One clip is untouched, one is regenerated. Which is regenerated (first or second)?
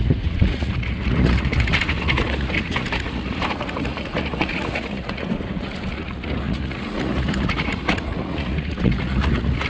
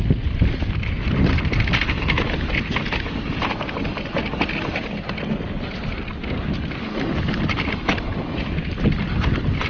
first